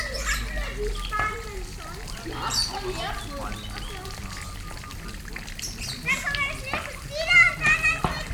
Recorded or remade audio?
recorded